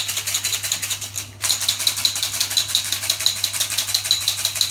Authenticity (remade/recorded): recorded